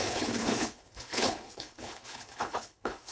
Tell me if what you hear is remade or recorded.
remade